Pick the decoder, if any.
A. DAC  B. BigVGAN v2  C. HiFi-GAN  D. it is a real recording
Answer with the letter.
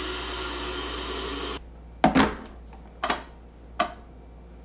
D